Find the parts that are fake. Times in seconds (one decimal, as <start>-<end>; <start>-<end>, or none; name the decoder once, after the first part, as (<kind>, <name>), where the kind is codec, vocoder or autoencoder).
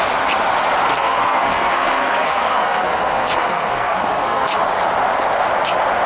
0.9-4.6 (codec, SNAC)